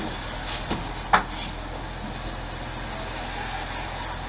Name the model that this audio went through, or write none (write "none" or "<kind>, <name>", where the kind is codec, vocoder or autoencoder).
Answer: none